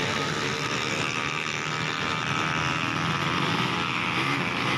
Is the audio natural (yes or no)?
yes